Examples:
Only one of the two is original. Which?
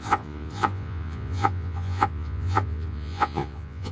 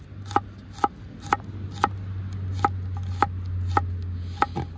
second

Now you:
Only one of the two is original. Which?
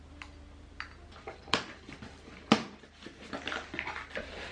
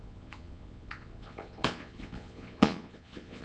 first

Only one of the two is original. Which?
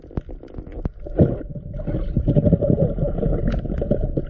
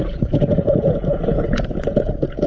first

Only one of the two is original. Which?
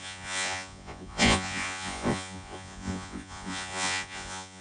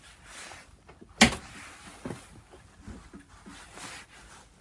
second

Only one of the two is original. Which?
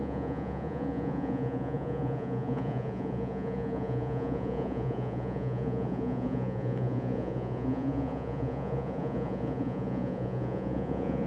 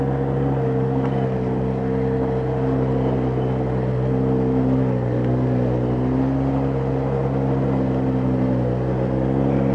second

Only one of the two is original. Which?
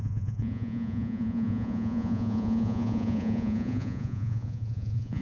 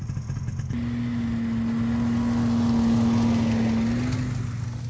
second